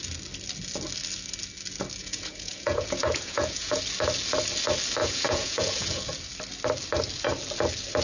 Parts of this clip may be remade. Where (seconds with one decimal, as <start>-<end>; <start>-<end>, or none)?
2.0-3.8; 5.0-6.0